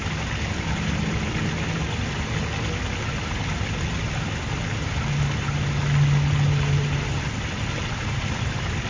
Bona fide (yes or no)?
yes